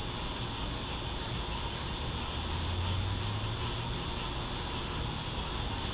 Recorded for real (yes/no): yes